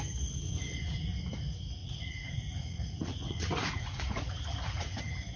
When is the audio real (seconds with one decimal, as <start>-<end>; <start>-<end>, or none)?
0.0-1.8; 5.0-5.4